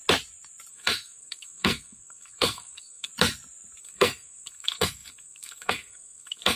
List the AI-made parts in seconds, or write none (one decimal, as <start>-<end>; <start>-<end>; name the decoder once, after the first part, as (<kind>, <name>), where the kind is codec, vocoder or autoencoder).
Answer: 0.7-3.1 (codec, SNAC); 3.8-6.6